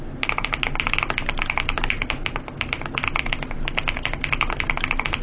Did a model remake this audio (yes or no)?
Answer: no